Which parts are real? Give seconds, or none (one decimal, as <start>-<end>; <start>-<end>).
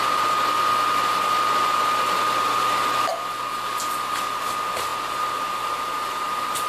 0.0-6.7